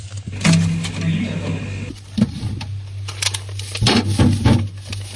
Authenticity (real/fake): real